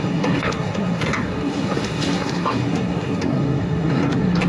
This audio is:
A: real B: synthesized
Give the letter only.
B